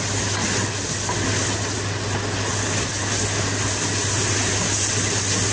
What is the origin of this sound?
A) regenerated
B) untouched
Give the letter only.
B